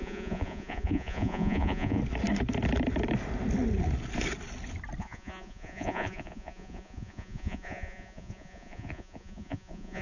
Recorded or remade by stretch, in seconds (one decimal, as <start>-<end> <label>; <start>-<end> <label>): 0.0-2.0 remade; 2.0-5.0 recorded; 5.0-10.0 remade